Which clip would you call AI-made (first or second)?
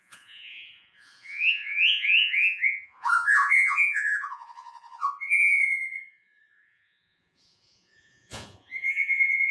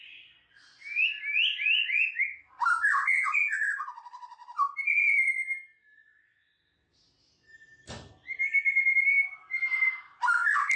first